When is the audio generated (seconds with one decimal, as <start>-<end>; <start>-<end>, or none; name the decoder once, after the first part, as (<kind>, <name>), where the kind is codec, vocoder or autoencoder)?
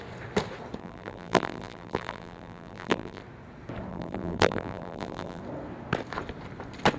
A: 0.8-3.2 (vocoder, BigVGAN v2); 3.9-5.4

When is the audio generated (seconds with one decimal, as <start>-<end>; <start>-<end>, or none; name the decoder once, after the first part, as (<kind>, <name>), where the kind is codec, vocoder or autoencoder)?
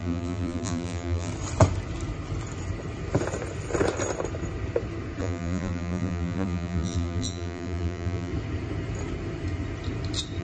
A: 0.0-1.3 (vocoder, BigVGAN v2); 5.2-8.3